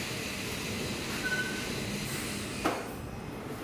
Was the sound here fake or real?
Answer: real